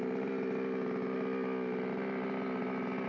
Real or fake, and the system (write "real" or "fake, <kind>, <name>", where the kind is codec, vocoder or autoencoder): real